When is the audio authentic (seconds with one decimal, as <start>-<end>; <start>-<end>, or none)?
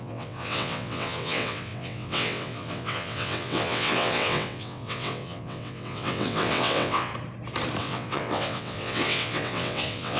7.1-7.8